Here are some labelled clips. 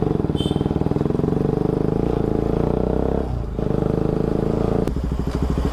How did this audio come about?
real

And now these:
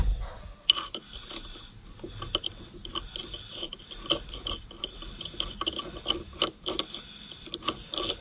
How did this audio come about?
real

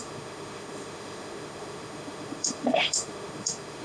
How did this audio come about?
fake